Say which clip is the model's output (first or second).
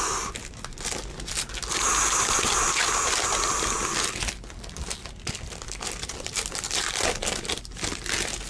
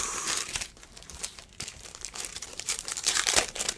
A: second